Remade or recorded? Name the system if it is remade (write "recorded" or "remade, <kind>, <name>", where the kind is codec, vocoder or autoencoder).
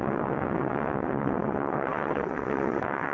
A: remade, vocoder, WaveNeXt